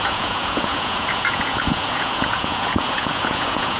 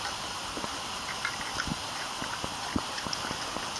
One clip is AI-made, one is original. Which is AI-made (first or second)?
first